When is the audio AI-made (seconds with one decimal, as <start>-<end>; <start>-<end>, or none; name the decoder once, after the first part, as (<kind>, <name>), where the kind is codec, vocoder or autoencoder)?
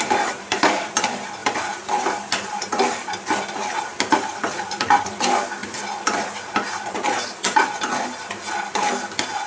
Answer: none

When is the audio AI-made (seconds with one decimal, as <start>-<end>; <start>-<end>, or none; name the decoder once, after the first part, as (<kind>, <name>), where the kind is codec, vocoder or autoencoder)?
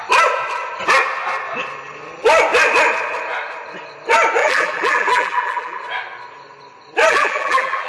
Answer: 4.4-5.8 (vocoder, BigVGAN v2); 7.1-7.9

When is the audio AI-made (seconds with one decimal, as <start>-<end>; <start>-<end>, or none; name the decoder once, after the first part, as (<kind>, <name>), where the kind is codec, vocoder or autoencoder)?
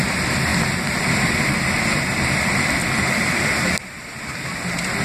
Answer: 0.5-3.5 (vocoder, BigVGAN v2)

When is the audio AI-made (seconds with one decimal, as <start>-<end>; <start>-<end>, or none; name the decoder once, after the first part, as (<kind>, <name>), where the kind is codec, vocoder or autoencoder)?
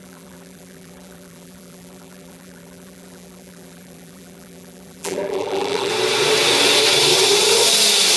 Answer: 0.0-5.9 (vocoder, BigVGAN v2)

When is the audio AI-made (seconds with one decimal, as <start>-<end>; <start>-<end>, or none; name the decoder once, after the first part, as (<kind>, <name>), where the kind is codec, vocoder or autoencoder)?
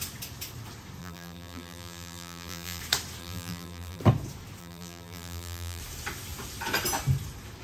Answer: 1.0-2.8 (vocoder, BigVGAN v2); 3.2-4.0; 4.6-5.8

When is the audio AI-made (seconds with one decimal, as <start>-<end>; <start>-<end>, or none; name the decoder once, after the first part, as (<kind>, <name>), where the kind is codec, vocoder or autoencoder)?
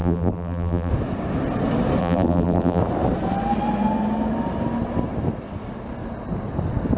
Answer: 0.0-0.9 (vocoder, BigVGAN v2); 2.0-2.8